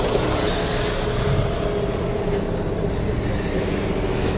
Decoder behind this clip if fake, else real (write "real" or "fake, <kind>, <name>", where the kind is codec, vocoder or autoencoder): real